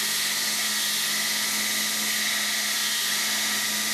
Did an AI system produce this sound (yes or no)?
no